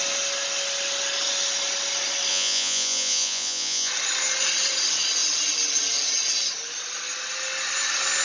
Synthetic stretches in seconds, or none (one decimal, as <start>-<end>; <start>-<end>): 2.3-3.9